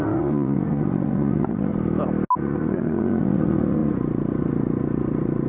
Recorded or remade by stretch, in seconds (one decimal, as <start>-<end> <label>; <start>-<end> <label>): 0.0-1.7 remade; 1.7-2.4 recorded; 2.4-5.5 remade